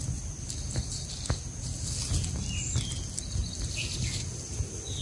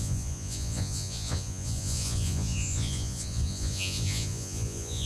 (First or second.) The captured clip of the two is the first